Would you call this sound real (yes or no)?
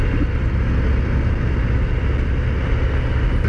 yes